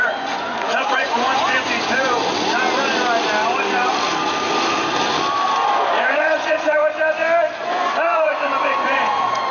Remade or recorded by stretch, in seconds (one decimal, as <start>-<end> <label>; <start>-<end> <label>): 0.0-2.2 remade; 2.2-5.9 recorded; 5.9-6.8 remade; 6.8-7.6 recorded; 7.6-9.5 remade